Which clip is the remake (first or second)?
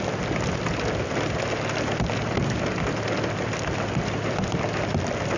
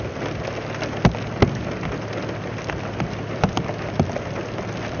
first